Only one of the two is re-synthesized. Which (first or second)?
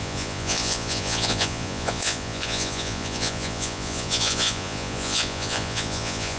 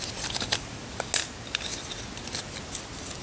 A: first